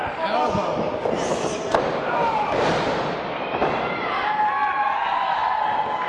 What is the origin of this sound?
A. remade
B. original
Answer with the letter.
B